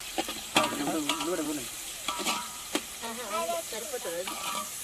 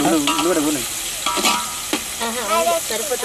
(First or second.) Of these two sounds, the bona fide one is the second